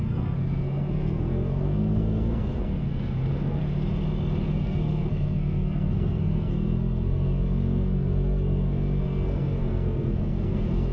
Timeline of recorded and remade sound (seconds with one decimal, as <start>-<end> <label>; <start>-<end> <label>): 0.0-3.6 remade; 3.6-4.5 recorded; 4.5-10.9 remade